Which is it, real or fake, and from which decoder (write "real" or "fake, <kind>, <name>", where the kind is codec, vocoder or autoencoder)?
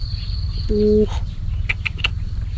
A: real